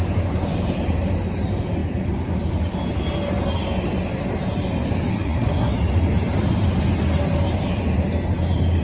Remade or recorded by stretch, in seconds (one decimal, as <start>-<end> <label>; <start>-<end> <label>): 0.0-5.1 recorded; 5.1-5.7 remade; 5.7-8.8 recorded